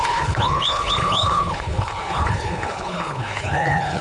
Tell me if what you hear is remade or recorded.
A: remade